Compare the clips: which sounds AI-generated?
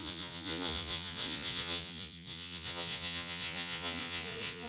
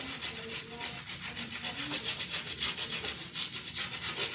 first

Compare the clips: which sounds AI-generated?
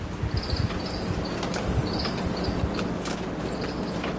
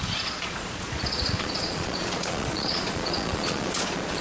second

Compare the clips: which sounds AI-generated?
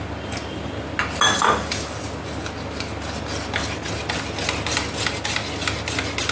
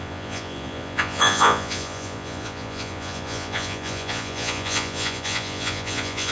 second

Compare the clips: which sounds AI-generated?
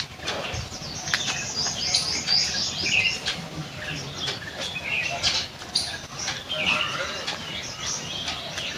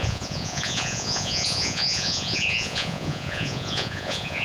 second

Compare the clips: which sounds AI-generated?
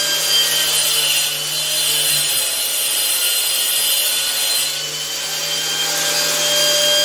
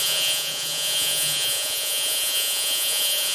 second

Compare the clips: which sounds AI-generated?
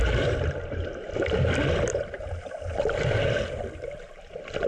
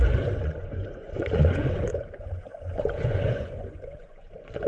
second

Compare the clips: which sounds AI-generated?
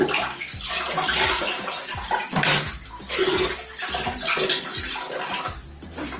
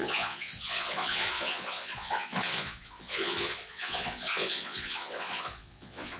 second